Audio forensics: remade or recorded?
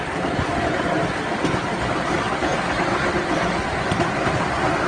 recorded